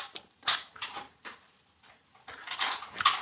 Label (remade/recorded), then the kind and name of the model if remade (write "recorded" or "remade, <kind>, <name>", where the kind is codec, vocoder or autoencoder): recorded